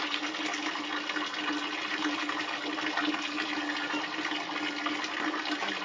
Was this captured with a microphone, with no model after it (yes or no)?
yes